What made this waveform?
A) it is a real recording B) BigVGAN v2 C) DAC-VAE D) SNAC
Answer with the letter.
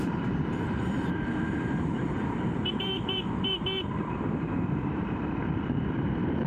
B